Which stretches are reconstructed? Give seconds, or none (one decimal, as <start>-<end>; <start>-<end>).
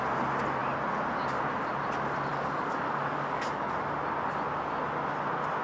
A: 2.3-3.7